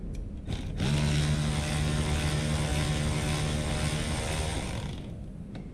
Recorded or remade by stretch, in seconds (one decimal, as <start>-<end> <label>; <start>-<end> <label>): 0.0-5.7 recorded

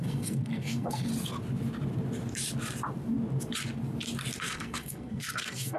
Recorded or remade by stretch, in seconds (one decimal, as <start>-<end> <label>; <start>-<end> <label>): 0.0-1.1 remade; 1.1-4.4 recorded; 4.4-5.8 remade

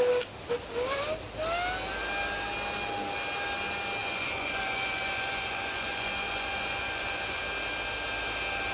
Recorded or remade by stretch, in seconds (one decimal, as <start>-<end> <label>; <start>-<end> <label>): 0.0-4.0 recorded; 4.0-7.4 remade; 7.4-8.7 recorded